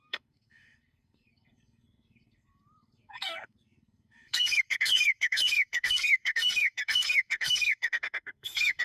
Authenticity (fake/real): fake